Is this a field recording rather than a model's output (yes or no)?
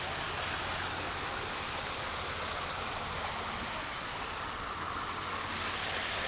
yes